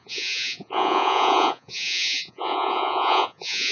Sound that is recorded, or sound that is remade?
remade